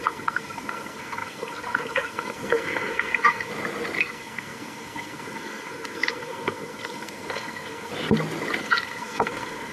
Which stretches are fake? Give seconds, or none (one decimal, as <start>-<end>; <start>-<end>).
0.0-3.5; 4.0-7.9; 8.6-9.7